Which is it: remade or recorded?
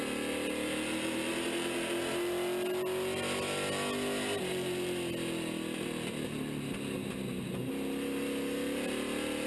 recorded